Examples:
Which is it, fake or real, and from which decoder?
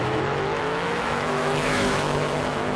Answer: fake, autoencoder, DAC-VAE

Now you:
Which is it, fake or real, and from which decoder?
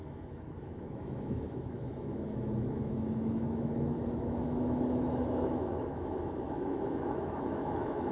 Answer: fake, autoencoder, DAC-VAE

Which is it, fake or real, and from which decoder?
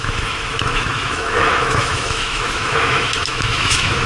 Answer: fake, autoencoder, DAC-VAE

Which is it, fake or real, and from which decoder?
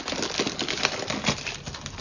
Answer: real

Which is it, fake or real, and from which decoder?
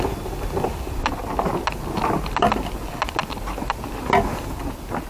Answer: real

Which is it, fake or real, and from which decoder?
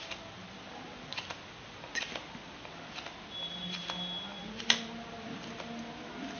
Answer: real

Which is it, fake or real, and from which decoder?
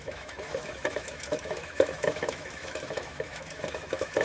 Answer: fake, autoencoder, DAC-VAE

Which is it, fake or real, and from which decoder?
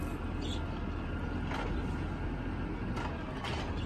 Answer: real